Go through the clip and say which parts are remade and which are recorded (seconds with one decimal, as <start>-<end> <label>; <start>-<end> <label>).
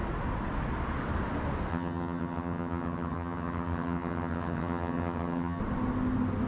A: 0.0-1.7 recorded; 1.7-5.6 remade; 5.6-6.5 recorded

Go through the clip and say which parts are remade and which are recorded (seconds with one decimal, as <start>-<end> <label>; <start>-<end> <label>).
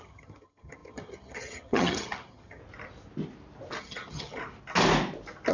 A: 0.0-2.6 remade; 2.6-3.8 recorded; 3.8-4.4 remade; 4.4-5.5 recorded